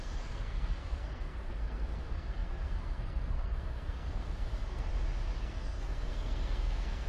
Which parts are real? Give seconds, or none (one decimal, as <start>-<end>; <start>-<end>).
4.9-5.4